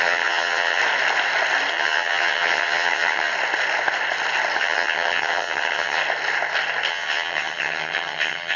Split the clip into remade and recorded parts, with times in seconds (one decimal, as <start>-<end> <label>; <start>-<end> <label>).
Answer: 0.0-0.8 remade; 0.8-1.7 recorded; 1.7-3.3 remade; 3.3-4.6 recorded; 4.6-6.0 remade; 6.0-6.9 recorded; 6.9-8.6 remade